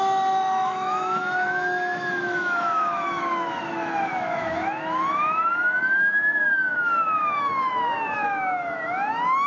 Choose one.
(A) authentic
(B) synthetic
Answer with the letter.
B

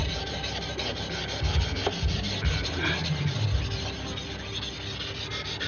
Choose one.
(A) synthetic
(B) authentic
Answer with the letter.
B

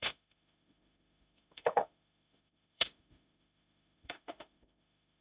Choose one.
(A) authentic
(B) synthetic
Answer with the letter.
B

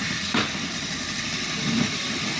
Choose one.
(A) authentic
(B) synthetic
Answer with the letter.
A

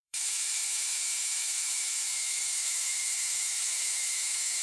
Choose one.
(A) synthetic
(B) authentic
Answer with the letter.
A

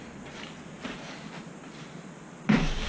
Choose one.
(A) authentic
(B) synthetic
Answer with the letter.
A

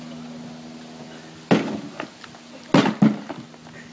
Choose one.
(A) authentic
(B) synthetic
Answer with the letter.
A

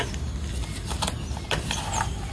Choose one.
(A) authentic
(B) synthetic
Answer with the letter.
A